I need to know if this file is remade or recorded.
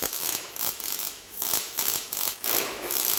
remade